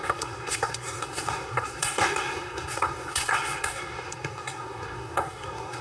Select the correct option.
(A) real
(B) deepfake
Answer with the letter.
B